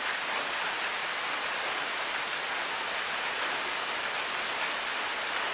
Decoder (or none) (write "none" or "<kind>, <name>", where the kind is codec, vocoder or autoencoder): none